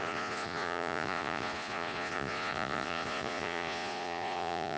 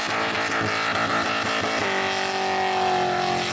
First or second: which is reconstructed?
first